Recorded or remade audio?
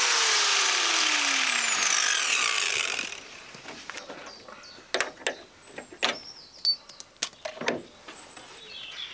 recorded